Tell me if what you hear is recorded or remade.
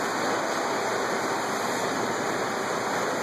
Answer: recorded